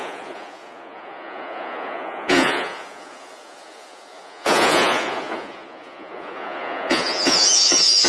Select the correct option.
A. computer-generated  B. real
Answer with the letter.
A